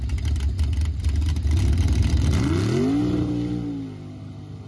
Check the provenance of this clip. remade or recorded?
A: recorded